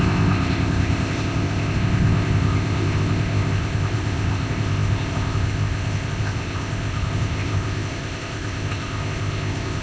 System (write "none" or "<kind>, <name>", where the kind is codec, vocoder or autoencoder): codec, ZipCodec